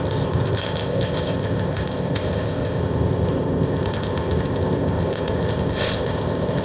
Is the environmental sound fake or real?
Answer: fake